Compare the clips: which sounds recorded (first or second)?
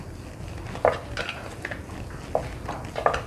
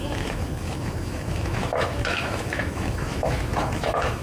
first